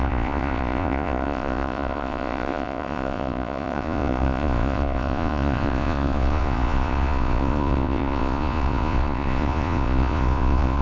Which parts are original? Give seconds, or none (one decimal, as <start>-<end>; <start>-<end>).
none